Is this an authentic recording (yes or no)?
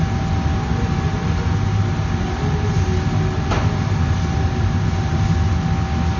yes